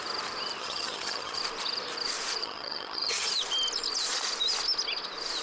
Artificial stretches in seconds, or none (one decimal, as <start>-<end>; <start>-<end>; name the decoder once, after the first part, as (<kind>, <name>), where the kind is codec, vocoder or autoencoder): 0.6-1.4 (vocoder, HiFi-GAN); 2.4-3.3